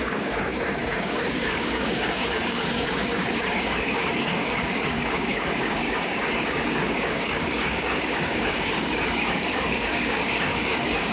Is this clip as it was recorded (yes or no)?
no